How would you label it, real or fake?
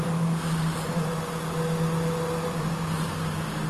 real